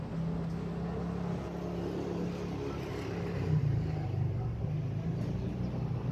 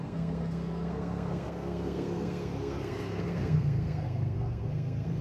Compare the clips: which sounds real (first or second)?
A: first